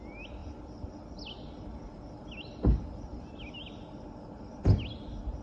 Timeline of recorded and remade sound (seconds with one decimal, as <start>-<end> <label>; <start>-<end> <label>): 0.0-5.4 recorded